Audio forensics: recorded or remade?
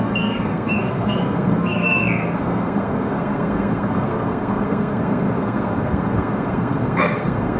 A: remade